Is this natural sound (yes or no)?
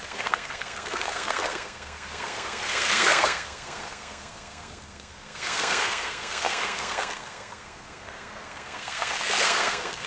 no